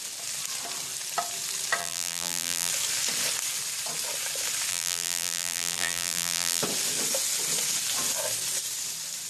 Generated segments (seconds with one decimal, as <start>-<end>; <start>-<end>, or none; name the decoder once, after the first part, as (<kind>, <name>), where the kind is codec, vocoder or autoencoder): 1.8-2.7 (vocoder, BigVGAN v2); 4.7-6.6